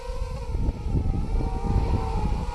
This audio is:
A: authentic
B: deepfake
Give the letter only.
A